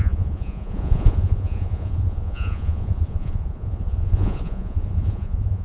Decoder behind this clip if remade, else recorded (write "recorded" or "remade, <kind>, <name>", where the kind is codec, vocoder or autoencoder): remade, vocoder, Vocos